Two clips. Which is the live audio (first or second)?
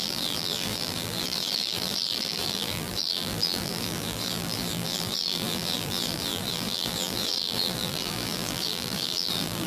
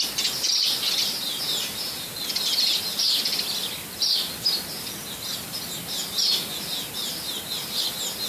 second